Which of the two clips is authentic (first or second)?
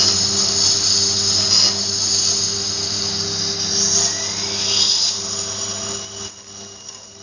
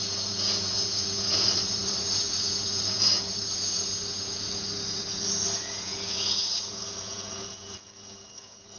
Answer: first